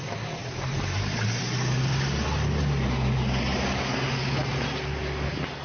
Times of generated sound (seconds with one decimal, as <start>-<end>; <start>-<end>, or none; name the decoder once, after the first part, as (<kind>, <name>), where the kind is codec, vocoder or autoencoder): 0.4-1.4 (vocoder, BigVGAN v2)